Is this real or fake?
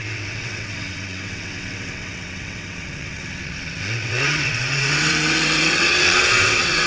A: fake